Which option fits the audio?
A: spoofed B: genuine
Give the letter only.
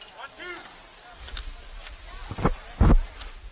B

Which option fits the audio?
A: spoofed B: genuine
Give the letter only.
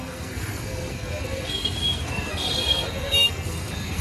A